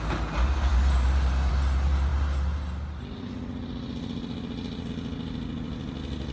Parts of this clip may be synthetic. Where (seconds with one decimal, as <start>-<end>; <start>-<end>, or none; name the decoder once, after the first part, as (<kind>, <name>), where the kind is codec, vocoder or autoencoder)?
none